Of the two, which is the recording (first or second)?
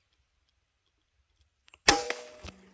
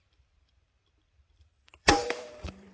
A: first